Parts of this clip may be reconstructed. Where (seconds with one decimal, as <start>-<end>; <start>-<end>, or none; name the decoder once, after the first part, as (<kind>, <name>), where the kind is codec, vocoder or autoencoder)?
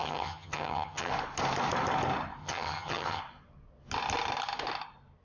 0.0-1.1 (vocoder, HiFi-GAN); 2.4-3.2